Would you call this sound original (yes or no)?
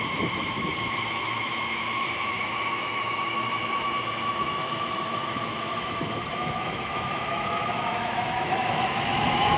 no